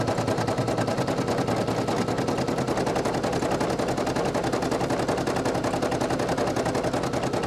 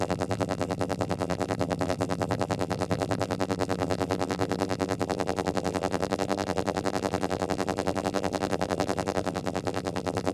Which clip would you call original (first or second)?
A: first